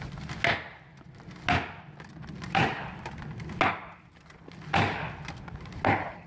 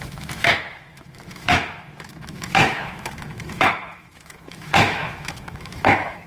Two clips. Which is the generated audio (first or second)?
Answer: second